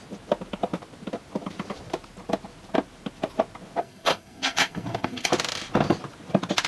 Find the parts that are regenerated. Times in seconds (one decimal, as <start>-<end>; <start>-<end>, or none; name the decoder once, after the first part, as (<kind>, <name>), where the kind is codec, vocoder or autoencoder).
3.8-5.3 (codec, SNAC)